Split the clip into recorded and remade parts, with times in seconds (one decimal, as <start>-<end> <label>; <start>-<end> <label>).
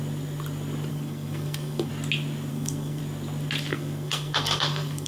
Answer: 0.0-0.9 recorded; 0.9-1.9 remade; 1.9-2.5 recorded; 2.5-3.0 remade; 3.0-3.7 recorded; 3.7-5.1 remade